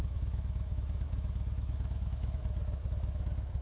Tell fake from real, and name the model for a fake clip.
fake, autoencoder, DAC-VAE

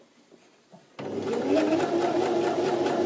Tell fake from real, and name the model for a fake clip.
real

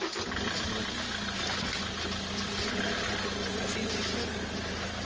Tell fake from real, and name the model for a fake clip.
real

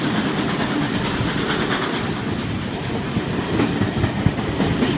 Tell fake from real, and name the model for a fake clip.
real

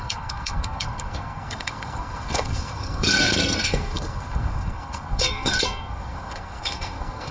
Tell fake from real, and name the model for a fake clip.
fake, codec, SNAC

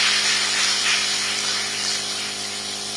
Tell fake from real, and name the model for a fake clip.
real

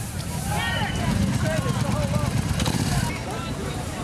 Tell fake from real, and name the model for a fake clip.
fake, vocoder, BigVGAN v2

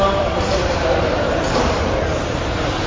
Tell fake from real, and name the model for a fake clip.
fake, vocoder, BigVGAN v2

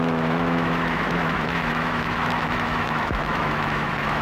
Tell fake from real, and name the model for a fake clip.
fake, autoencoder, DAC-VAE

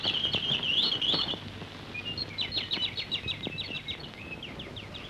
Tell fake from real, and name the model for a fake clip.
real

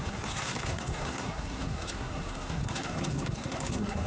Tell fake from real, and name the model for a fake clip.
fake, codec, SNAC